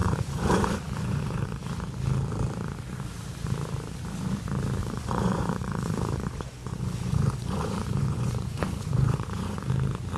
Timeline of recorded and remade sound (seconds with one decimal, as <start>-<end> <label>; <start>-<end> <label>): 0.0-1.7 remade; 1.7-4.8 recorded; 4.8-9.7 remade; 9.7-10.2 recorded